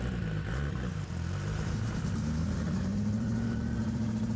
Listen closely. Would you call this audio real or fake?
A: fake